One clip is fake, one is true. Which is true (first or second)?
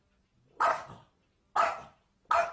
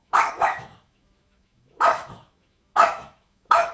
first